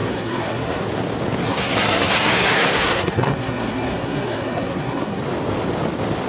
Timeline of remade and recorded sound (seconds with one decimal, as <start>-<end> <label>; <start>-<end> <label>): 0.0-0.8 remade; 0.8-1.4 recorded; 1.4-5.2 remade; 5.2-6.3 recorded